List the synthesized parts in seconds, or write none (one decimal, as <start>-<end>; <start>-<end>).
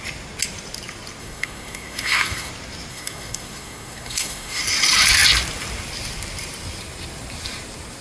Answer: 1.2-2.5; 2.9-4.6